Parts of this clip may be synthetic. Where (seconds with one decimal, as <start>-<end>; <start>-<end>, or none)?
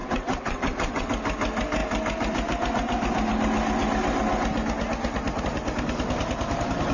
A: 0.0-1.1